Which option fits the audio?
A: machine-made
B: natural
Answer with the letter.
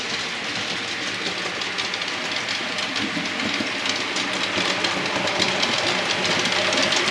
B